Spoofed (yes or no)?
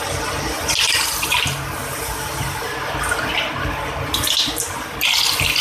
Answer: no